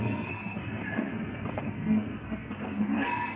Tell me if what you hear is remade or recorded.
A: remade